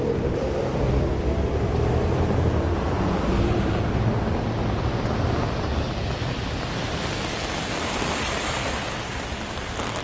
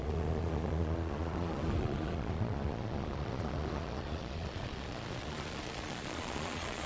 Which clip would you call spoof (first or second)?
second